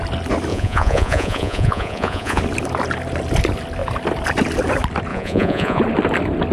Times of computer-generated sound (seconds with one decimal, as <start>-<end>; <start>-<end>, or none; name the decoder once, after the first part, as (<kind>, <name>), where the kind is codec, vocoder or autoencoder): 0.5-2.4 (vocoder, Vocos); 5.1-5.8